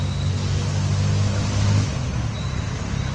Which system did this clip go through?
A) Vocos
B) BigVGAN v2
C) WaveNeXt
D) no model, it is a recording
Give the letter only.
D